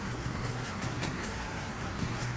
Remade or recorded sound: remade